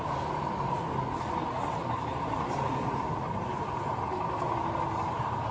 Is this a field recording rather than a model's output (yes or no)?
yes